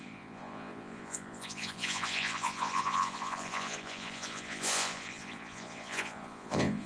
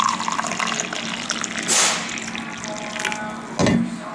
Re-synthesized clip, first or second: first